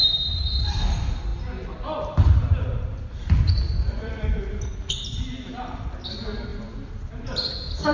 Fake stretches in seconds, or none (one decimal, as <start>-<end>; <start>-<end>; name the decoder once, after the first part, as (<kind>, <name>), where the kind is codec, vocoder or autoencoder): 1.3-6.0 (vocoder, BigVGAN v2); 6.5-7.1